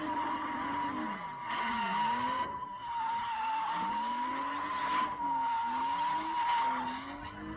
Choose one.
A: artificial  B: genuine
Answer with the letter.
B